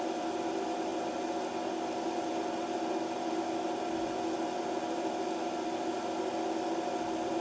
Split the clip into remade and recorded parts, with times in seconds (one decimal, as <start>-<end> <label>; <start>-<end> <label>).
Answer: 0.0-7.4 recorded